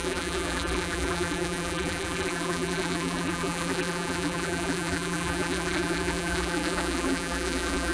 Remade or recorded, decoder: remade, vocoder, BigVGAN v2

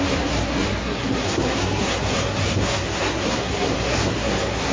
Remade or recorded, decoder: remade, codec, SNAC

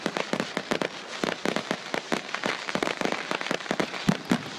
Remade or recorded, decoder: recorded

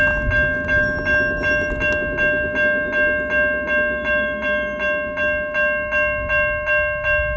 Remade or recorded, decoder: recorded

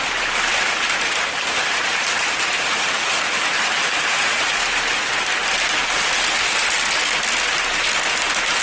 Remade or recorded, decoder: recorded